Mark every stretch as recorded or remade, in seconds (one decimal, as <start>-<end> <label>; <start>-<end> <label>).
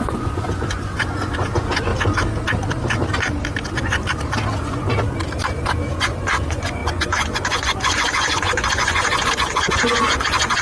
0.0-1.9 remade; 1.9-4.6 recorded; 4.6-5.0 remade; 5.0-5.9 recorded; 5.9-10.6 remade